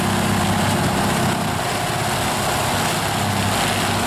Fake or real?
real